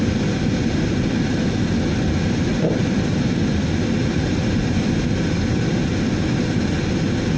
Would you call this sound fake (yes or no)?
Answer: no